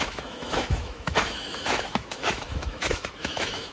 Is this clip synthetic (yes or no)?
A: yes